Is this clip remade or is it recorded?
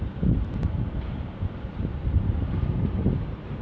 remade